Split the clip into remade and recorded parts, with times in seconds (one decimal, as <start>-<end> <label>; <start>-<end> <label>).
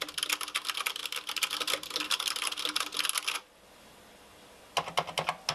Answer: 0.0-5.5 recorded